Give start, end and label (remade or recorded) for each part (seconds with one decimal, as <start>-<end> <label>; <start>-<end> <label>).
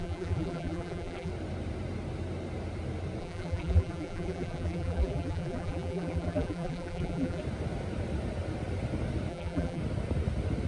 0.0-1.3 remade; 1.3-3.2 recorded; 3.2-7.4 remade; 7.4-9.3 recorded; 9.3-9.8 remade; 9.8-10.7 recorded